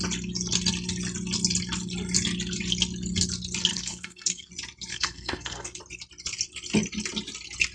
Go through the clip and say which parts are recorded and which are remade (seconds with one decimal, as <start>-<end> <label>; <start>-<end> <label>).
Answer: 0.0-3.7 recorded; 3.7-4.5 remade; 4.5-4.9 recorded; 4.9-5.8 remade; 5.8-7.7 recorded